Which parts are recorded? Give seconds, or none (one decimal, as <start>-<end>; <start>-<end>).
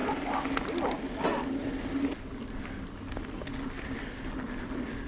0.0-5.1